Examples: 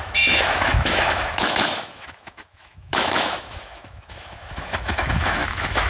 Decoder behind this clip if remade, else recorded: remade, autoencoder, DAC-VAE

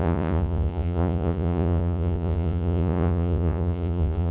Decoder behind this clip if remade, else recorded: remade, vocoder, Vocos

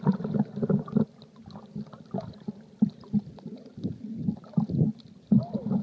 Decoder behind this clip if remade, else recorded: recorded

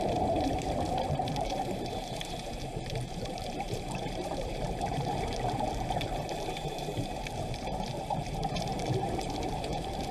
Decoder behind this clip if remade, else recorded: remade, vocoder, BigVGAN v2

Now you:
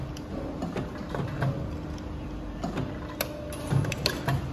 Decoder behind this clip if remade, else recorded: recorded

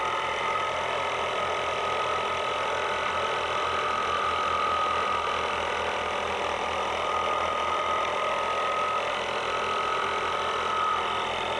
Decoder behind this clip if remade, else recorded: recorded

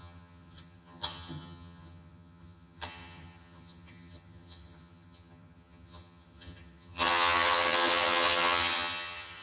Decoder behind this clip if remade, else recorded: remade, vocoder, HiFi-GAN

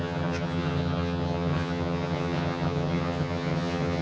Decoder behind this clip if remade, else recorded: remade, vocoder, HiFi-GAN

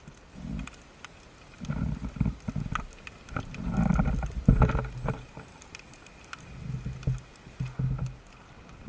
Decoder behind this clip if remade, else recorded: recorded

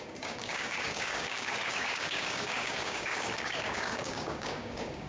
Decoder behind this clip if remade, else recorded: remade, codec, DAC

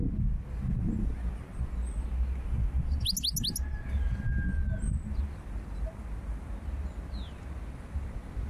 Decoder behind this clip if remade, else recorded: recorded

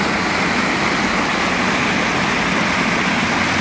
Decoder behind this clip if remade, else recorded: recorded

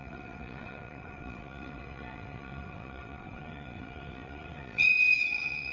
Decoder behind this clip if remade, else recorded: remade, vocoder, WaveNeXt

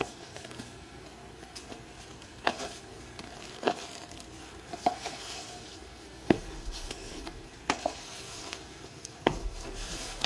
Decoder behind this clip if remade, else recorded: remade, codec, SNAC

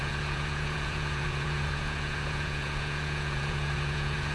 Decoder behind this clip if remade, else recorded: remade, vocoder, Vocos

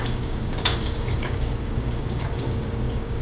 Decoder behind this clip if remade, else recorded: remade, codec, DAC